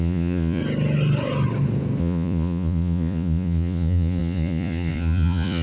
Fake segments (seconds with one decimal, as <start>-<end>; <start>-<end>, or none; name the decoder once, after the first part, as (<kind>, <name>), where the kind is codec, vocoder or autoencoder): 0.0-0.6 (vocoder, Vocos); 2.0-5.6